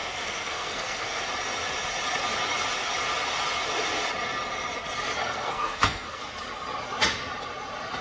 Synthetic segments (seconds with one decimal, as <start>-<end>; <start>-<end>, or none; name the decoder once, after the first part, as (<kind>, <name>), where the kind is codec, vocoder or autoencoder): 0.0-1.2 (codec, SNAC); 5.2-6.2